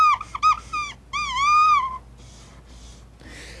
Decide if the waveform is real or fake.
real